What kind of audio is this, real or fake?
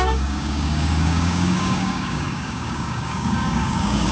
fake